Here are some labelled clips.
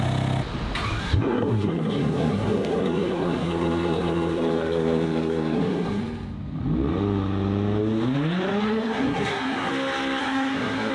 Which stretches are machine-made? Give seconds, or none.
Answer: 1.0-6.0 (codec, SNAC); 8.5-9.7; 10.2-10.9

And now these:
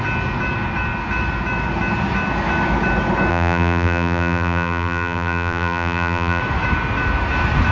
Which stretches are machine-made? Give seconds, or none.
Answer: 3.3-6.4 (vocoder, BigVGAN v2)

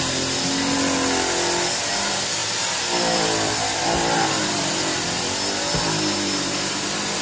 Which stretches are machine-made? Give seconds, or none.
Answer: 2.4-6.7 (vocoder, BigVGAN v2)

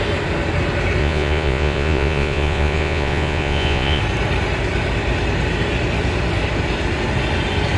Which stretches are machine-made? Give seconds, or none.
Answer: 1.0-4.0 (vocoder, Vocos)